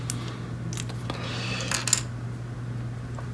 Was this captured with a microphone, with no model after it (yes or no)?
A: yes